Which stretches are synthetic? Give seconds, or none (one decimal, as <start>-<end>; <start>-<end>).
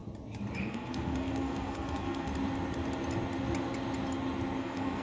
0.6-2.3; 4.6-5.0